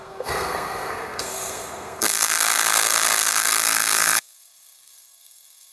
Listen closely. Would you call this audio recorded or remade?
remade